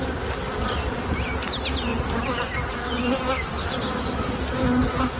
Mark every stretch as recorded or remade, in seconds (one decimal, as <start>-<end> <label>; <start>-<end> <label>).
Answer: 0.0-3.6 recorded; 3.6-4.2 remade; 4.2-5.2 recorded